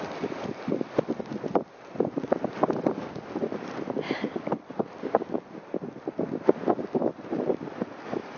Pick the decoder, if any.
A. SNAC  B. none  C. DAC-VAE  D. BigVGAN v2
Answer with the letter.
B